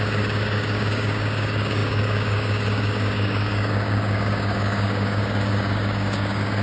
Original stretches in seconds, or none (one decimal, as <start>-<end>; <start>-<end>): none